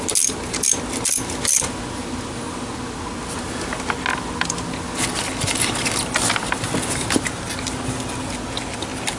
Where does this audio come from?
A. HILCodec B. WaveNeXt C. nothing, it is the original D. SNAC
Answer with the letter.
C